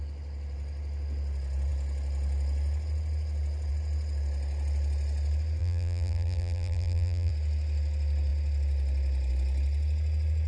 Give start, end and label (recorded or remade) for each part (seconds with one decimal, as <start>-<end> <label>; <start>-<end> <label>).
0.0-5.6 recorded; 5.6-7.3 remade; 7.3-10.5 recorded